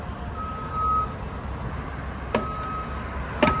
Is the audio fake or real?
real